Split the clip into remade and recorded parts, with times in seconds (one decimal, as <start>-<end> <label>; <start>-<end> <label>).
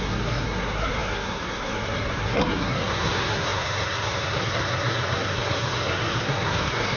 0.0-7.0 remade